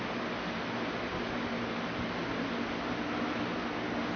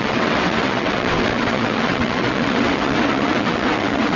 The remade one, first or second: second